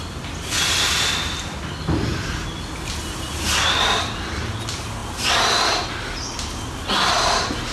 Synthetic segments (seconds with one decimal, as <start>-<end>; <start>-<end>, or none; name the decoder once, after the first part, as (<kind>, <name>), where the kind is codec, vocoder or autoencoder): none